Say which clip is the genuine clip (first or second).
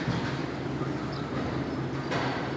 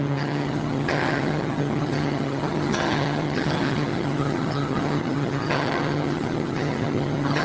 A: first